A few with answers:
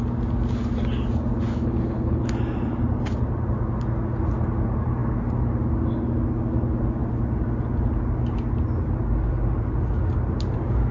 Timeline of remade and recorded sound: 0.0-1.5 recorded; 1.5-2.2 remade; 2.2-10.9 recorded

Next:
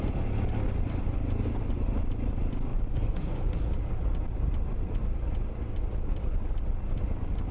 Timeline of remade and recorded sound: 0.0-2.7 recorded; 2.7-3.5 remade; 3.5-7.5 recorded

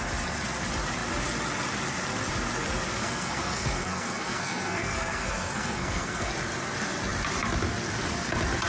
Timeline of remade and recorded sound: 0.0-3.0 recorded; 3.0-6.3 remade; 6.3-8.7 recorded

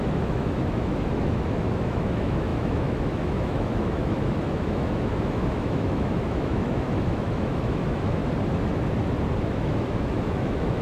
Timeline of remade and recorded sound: 0.0-8.2 remade; 8.2-9.5 recorded; 9.5-10.8 remade

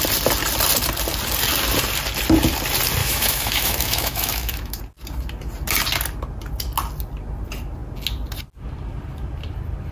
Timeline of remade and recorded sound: 0.0-3.0 recorded; 3.0-4.8 remade; 4.8-9.9 recorded

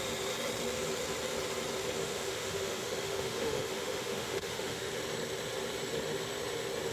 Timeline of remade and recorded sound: 0.0-2.0 recorded; 2.0-4.9 remade; 4.9-6.9 recorded

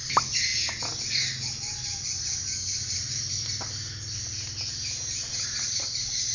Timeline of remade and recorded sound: 0.0-6.3 recorded